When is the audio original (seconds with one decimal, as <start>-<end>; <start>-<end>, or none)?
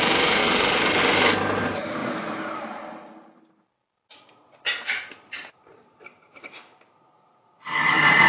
0.0-8.3